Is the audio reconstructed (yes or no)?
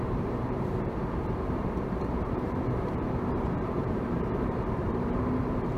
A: yes